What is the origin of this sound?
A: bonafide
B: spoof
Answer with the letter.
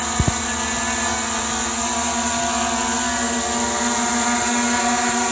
A